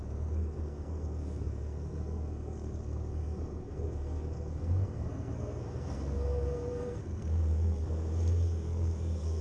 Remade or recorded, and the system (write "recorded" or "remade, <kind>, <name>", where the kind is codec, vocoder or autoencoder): remade, codec, SNAC